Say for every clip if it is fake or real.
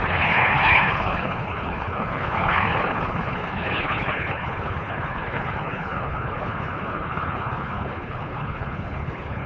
fake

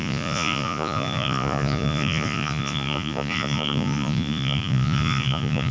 fake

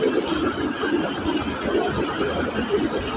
real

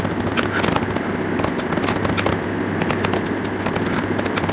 real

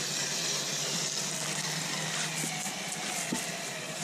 real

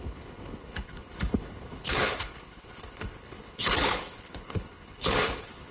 fake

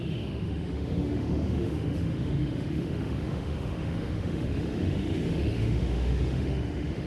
fake